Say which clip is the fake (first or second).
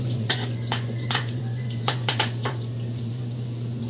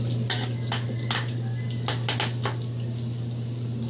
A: first